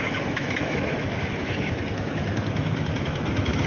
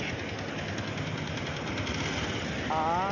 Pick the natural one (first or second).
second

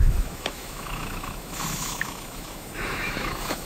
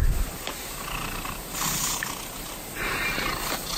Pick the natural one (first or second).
second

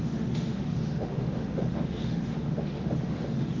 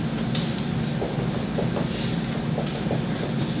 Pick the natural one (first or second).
second